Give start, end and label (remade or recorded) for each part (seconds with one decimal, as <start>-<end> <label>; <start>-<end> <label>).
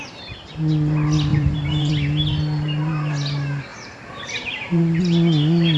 0.0-1.3 recorded; 1.3-1.9 remade; 1.9-3.7 recorded; 3.7-5.0 remade; 5.0-5.8 recorded